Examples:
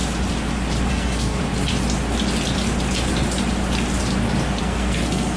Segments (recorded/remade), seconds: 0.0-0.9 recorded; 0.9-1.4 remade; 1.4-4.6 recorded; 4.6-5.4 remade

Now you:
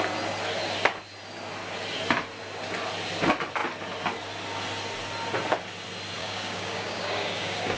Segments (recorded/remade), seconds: 0.0-6.2 recorded; 6.2-7.8 remade

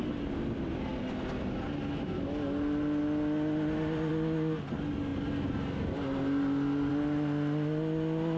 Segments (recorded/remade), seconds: 0.0-8.4 recorded

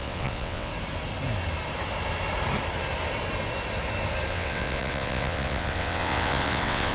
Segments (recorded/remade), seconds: 0.0-0.7 remade; 0.7-4.3 recorded; 4.3-6.9 remade